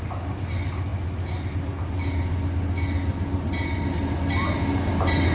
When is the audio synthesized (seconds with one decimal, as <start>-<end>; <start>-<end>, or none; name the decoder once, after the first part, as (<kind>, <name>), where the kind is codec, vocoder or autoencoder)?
none